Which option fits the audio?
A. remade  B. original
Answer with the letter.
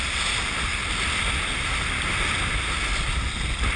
B